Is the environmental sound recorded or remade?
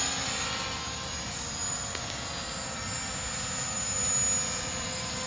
recorded